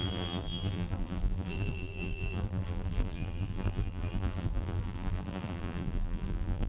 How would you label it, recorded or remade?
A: remade